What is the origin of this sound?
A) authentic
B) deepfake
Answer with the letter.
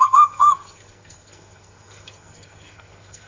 B